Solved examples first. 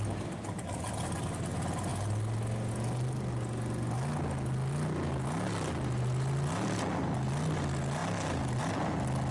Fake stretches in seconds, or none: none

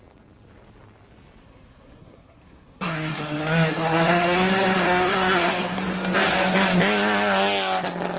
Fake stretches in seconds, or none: 1.4-5.8 (codec, SNAC)

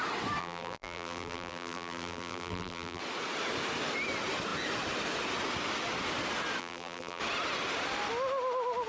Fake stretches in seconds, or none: 0.4-3.0 (vocoder, BigVGAN v2); 6.6-7.2

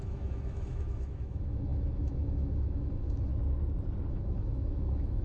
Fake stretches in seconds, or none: 0.0-3.3 (autoencoder, DAC-VAE); 4.1-5.2

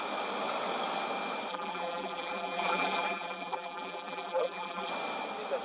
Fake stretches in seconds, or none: 1.5-4.9 (vocoder, BigVGAN v2)

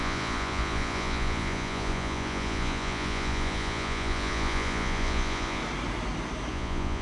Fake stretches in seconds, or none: 0.0-5.6 (vocoder, Vocos); 6.5-7.0